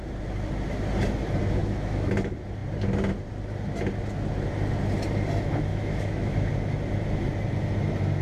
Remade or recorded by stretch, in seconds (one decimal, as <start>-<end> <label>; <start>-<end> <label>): 0.0-1.6 recorded; 1.6-2.1 remade; 2.1-5.7 recorded; 5.7-6.5 remade; 6.5-8.2 recorded